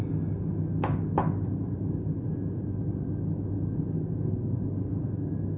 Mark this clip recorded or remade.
recorded